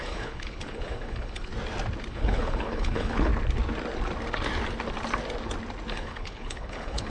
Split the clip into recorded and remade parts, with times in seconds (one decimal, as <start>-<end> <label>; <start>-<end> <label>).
0.0-1.5 remade; 1.5-2.1 recorded; 2.1-3.3 remade; 3.3-5.9 recorded; 5.9-7.1 remade